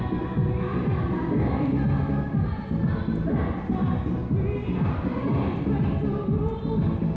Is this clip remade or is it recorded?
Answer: recorded